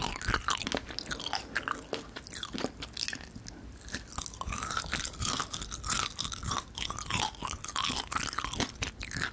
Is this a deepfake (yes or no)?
no